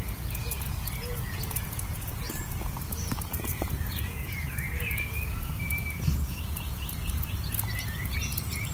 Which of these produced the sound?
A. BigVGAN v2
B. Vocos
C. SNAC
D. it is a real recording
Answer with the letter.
B